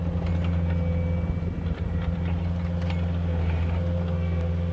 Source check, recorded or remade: recorded